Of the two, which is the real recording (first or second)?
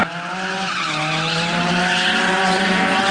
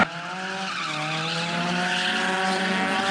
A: second